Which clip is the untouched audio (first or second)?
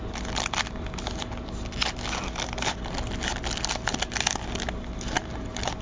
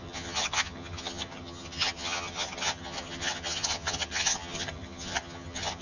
first